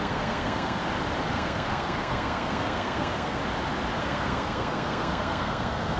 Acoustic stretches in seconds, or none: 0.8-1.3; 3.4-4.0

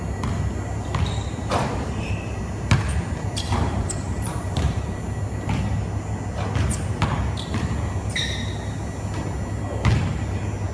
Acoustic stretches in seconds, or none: 0.0-1.2; 2.3-3.6; 5.0-10.7

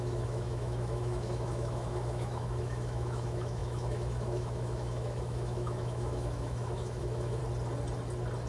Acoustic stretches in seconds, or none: 7.4-8.5